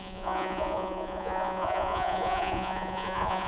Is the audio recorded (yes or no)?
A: no